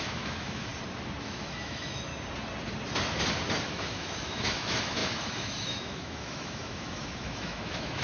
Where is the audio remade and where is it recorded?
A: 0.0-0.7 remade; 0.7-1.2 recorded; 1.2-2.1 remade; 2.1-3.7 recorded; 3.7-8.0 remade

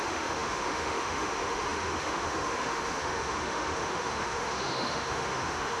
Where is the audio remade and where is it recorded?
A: 0.0-5.8 remade

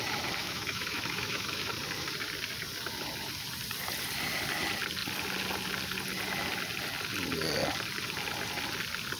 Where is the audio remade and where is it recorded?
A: 0.0-0.4 recorded; 0.4-1.7 remade; 1.7-9.2 recorded